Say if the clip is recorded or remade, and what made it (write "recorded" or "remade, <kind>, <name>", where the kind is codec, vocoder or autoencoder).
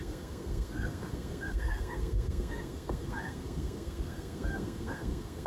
remade, codec, SNAC